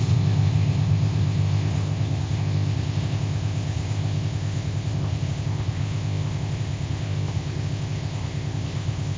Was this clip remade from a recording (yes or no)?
yes